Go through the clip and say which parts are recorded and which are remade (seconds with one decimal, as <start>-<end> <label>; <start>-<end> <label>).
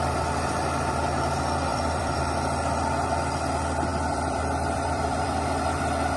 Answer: 0.0-1.7 recorded; 1.7-2.2 remade; 2.2-3.9 recorded; 3.9-5.8 remade; 5.8-6.2 recorded